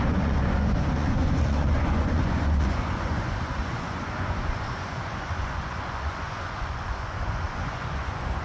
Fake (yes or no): yes